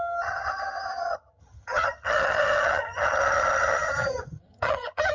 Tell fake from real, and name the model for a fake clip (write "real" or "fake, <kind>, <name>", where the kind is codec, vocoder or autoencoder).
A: fake, vocoder, HiFi-GAN